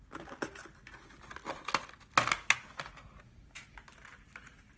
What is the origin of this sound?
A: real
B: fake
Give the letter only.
A